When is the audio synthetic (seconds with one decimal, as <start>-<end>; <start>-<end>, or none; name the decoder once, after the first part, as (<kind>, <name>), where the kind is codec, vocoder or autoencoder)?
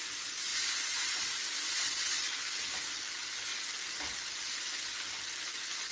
none